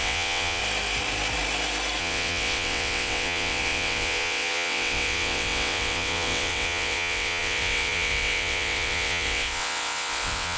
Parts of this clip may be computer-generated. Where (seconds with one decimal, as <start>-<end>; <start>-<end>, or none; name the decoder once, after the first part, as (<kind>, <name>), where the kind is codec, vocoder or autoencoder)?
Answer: 0.0-0.6 (vocoder, WaveNeXt); 2.0-10.6